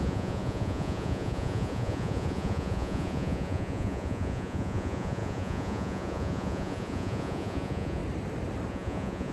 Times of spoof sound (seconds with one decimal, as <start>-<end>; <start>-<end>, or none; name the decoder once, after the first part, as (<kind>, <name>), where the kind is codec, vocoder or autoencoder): 0.0-8.0 (vocoder, Vocos); 8.7-9.3